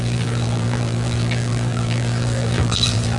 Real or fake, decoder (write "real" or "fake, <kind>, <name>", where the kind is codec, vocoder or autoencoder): fake, vocoder, BigVGAN v2